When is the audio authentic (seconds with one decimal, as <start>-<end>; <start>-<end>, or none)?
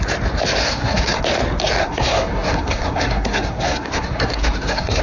0.0-0.6; 1.2-1.8